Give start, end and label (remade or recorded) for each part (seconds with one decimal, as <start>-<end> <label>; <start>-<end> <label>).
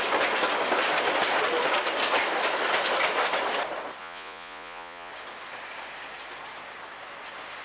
0.0-4.0 recorded; 4.0-5.1 remade; 5.1-7.6 recorded